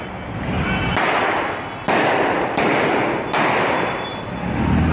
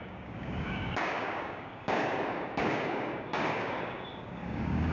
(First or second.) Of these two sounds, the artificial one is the second